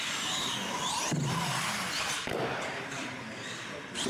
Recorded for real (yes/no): yes